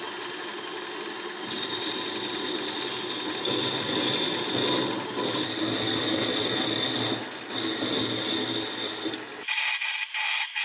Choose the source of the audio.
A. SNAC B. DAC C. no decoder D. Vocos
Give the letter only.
C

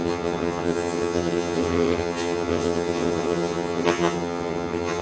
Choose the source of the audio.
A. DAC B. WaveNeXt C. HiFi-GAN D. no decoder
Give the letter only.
C